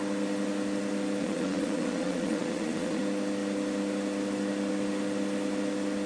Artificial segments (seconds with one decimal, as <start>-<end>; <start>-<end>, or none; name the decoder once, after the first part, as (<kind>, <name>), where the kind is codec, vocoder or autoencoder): 1.2-3.0 (vocoder, Vocos)